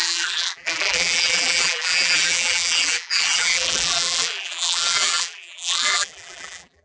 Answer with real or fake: fake